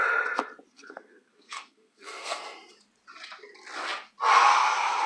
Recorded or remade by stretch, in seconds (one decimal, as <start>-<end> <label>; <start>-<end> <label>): 0.0-0.7 recorded; 0.7-2.4 remade; 2.4-5.1 recorded